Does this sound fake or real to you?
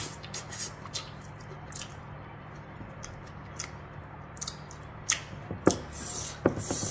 real